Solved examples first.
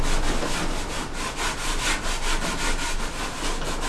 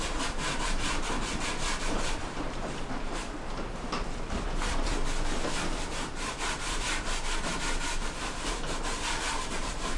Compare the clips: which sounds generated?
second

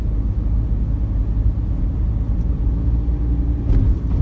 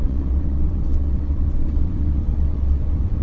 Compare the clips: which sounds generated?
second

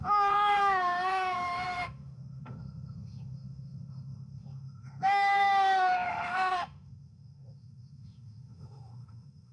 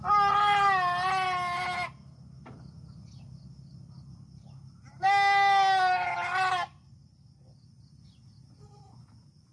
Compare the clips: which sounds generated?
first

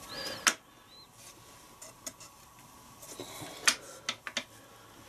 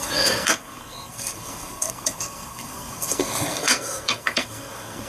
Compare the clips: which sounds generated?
second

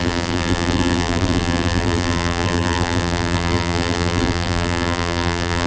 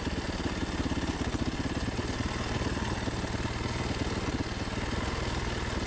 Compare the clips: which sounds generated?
first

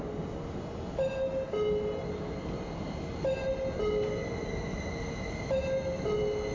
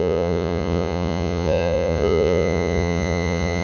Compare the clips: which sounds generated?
second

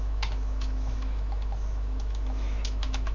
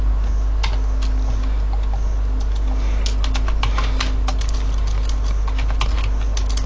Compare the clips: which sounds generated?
first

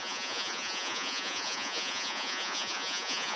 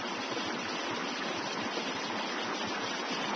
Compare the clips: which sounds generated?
first